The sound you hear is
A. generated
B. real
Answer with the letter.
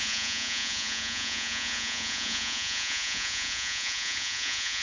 A